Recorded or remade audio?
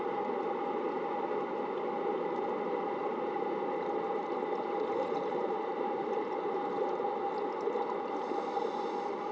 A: recorded